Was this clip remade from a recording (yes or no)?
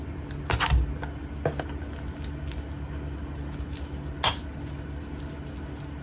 no